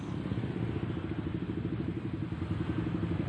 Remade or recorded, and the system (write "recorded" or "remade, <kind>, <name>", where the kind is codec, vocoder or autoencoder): recorded